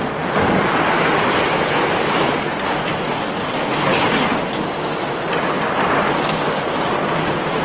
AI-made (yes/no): no